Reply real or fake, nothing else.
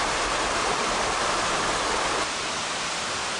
fake